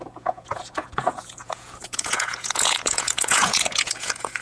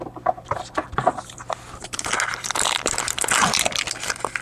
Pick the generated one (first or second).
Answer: first